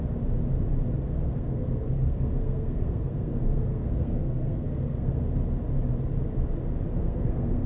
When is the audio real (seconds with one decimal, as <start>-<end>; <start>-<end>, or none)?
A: 0.0-1.3; 5.2-7.0